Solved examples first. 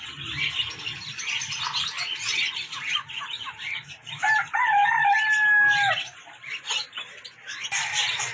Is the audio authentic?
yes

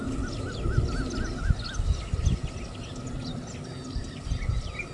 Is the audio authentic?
yes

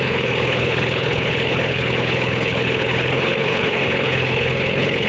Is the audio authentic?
no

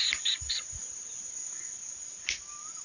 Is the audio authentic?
yes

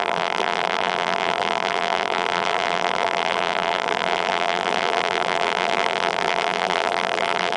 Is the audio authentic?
no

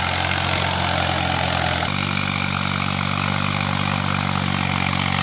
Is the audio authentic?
yes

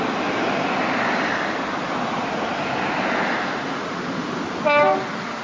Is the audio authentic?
yes